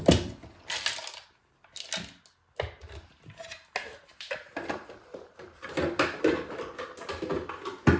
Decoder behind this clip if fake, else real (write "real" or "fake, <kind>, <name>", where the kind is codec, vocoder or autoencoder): real